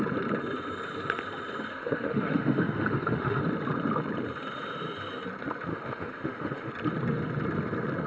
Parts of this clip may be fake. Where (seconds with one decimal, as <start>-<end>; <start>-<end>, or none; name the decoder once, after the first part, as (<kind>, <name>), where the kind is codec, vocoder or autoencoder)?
1.7-3.4 (autoencoder, DAC-VAE); 5.7-6.7